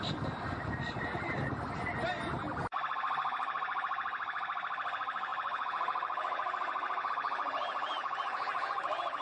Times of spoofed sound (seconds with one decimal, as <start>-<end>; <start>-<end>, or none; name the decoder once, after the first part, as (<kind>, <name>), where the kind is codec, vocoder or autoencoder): none